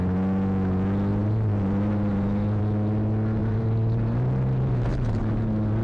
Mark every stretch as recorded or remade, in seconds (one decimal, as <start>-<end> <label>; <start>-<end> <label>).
0.0-1.1 recorded; 1.1-2.6 remade; 2.6-3.4 recorded; 3.4-5.2 remade; 5.2-5.8 recorded